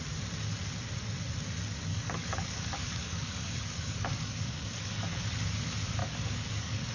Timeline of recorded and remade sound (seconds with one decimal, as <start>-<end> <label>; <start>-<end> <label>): 0.0-1.9 recorded; 1.9-5.2 remade; 5.2-6.0 recorded; 6.0-6.9 remade